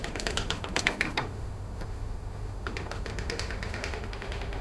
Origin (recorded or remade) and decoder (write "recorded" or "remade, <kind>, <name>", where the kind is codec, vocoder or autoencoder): remade, autoencoder, DAC-VAE